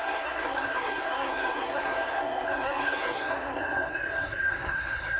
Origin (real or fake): fake